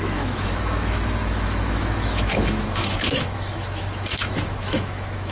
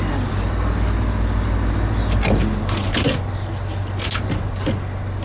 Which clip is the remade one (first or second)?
first